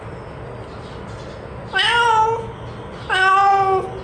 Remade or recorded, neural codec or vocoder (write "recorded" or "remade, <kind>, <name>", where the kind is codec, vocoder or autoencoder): recorded